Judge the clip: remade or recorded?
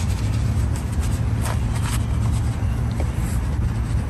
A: recorded